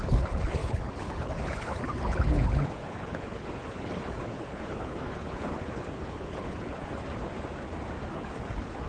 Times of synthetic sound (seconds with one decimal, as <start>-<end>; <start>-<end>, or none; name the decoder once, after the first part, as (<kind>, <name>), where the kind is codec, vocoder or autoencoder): 0.0-7.0 (codec, HILCodec); 8.1-8.9